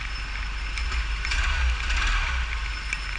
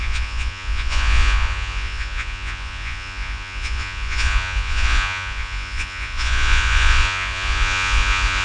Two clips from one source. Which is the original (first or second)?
first